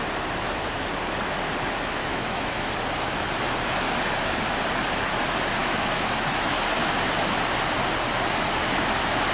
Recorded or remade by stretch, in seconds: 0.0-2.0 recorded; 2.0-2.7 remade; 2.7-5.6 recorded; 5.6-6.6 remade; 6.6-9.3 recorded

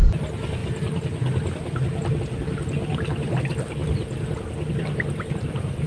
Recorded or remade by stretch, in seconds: 0.0-5.9 recorded

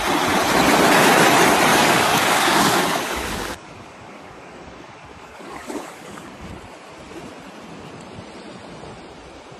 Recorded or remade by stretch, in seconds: 0.0-1.7 recorded; 1.7-6.5 remade; 6.5-9.6 recorded